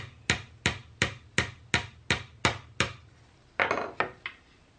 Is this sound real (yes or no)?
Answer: yes